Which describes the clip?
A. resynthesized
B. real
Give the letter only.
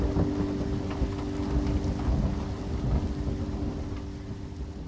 B